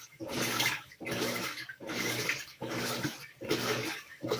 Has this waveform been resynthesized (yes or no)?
yes